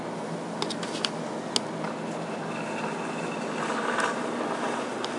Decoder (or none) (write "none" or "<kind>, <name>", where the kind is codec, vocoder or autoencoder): none